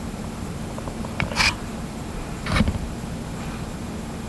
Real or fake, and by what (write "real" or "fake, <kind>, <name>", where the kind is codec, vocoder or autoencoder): fake, vocoder, BigVGAN v2